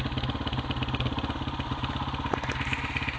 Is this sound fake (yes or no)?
no